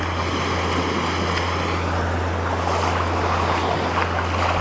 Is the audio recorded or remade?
recorded